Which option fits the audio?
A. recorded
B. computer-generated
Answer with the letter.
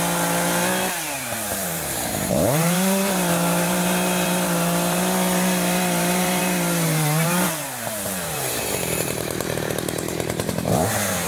B